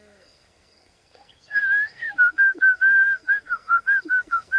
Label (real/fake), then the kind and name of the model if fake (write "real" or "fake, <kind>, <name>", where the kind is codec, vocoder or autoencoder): fake, codec, SNAC